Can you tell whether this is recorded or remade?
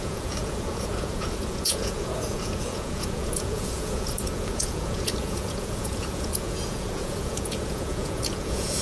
remade